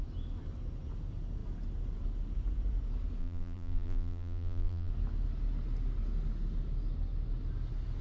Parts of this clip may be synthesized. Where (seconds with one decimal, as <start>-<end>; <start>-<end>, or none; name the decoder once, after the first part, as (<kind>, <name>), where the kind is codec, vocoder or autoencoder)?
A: 3.2-4.9 (vocoder, BigVGAN v2)